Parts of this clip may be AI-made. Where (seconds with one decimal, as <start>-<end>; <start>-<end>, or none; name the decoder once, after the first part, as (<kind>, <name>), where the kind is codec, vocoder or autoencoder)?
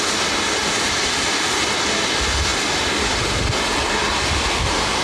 none